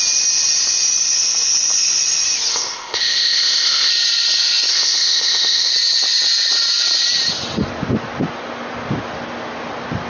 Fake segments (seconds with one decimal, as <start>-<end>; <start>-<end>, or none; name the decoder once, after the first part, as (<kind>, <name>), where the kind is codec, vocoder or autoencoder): 2.5-3.9 (codec, ZipCodec); 4.7-5.7